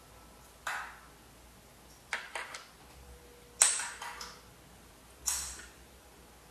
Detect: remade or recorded recorded